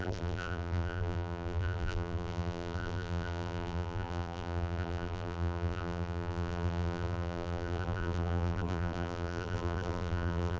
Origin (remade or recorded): remade